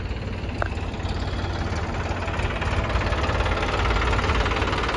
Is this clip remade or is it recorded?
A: recorded